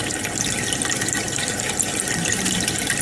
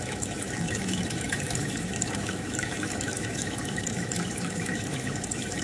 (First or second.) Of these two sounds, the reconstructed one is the second